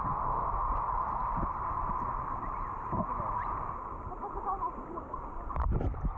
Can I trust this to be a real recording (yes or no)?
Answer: yes